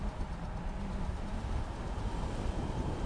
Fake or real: real